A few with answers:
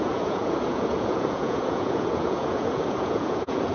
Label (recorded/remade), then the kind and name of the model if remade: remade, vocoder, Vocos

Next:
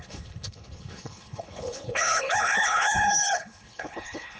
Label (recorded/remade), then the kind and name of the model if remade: remade, codec, HILCodec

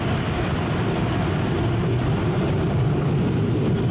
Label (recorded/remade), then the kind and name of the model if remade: recorded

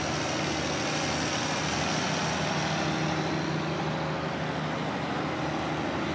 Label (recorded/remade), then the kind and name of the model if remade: recorded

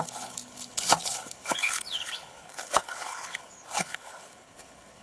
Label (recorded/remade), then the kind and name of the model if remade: remade, codec, HILCodec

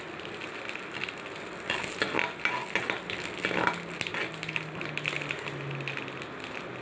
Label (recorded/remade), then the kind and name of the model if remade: recorded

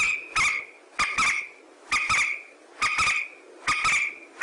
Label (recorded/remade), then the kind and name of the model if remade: recorded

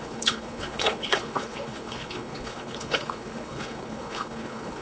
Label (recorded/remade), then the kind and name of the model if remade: remade, codec, HILCodec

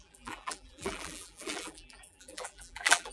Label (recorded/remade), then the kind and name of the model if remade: remade, vocoder, BigVGAN v2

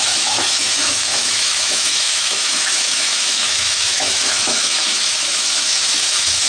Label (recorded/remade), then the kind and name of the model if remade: remade, autoencoder, DAC-VAE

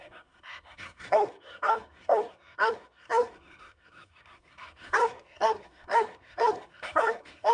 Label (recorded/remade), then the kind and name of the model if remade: remade, codec, SNAC